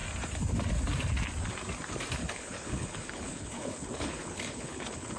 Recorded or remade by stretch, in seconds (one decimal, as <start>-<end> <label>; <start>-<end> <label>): 0.0-2.2 recorded; 2.2-5.2 remade